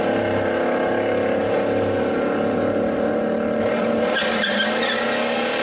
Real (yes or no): yes